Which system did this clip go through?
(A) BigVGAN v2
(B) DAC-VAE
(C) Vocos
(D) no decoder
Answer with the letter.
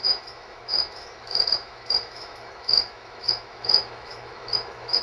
B